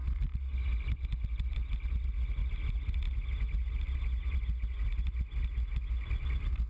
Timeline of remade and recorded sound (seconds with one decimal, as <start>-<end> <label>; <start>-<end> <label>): 0.0-6.7 recorded